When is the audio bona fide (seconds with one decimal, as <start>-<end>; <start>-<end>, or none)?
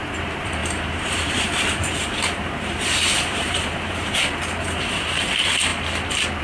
5.7-6.4